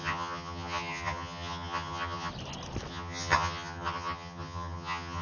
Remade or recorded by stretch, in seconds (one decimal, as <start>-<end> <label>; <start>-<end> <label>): 0.0-2.3 remade; 2.3-2.9 recorded; 2.9-5.2 remade